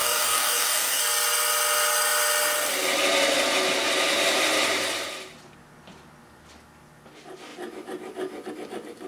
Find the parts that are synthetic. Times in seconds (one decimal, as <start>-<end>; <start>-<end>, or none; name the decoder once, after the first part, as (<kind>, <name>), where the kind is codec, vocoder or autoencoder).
0.0-1.0 (codec, DAC)